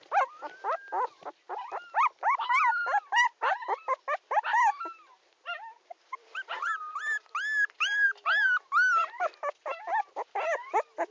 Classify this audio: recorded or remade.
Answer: recorded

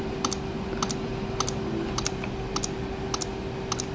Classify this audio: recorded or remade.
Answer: recorded